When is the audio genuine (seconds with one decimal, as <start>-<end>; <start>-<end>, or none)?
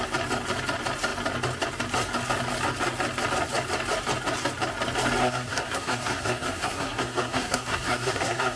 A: 0.0-5.2